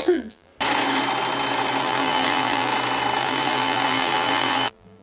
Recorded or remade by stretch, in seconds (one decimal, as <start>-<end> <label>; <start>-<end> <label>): 0.0-0.5 remade; 0.5-1.8 recorded; 1.8-2.7 remade; 2.7-3.2 recorded; 3.2-5.0 remade